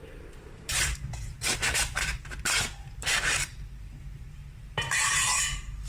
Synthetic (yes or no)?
yes